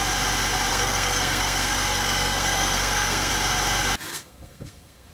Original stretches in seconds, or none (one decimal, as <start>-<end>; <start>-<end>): 0.0-0.7; 3.3-4.1